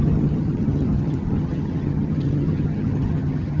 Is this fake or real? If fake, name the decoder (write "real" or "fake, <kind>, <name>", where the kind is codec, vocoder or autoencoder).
fake, vocoder, HiFi-GAN